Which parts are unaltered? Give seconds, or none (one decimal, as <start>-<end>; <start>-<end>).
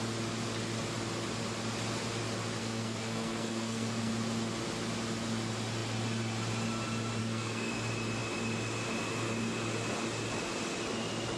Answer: 0.0-2.6; 4.1-7.2; 7.7-11.4